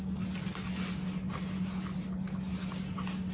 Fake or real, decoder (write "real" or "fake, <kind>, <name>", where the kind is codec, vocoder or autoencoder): real